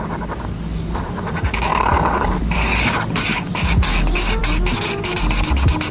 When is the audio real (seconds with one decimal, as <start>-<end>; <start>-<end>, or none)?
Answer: 4.4-5.9